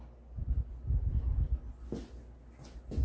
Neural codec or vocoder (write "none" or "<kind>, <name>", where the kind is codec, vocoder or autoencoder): none